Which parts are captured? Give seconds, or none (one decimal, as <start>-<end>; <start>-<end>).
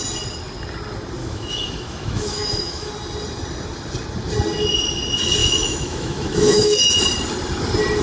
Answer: 0.0-1.2; 2.9-5.4; 7.0-8.0